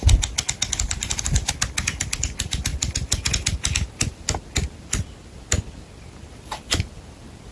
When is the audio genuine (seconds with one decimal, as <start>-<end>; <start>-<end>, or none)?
0.0-7.5